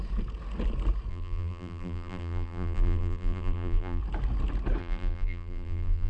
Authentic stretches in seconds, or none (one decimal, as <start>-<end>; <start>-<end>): 0.0-1.1; 4.0-4.8